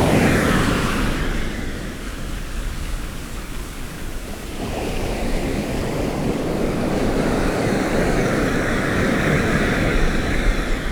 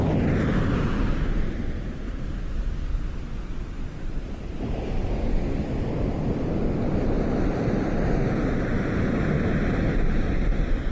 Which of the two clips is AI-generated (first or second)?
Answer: first